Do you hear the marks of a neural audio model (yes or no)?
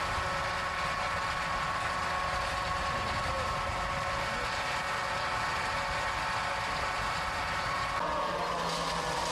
no